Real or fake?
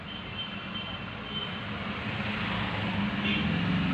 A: real